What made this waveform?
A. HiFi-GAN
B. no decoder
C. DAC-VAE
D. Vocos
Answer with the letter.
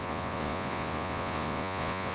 D